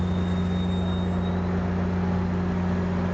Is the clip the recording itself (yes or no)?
yes